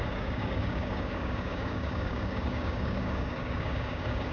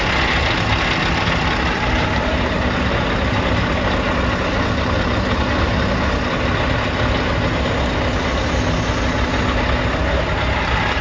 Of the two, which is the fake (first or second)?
first